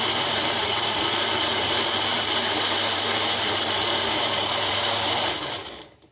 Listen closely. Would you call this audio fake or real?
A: fake